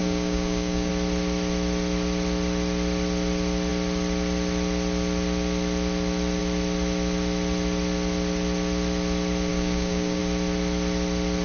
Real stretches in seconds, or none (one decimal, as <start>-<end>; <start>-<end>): 0.9-9.5; 10.2-11.4